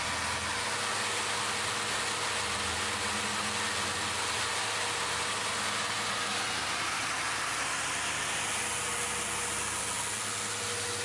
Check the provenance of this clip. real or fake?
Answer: real